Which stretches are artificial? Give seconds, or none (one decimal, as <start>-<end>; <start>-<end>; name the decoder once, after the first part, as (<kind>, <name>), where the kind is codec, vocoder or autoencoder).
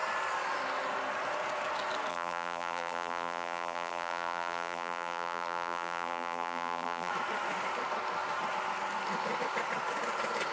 2.1-7.1 (vocoder, BigVGAN v2)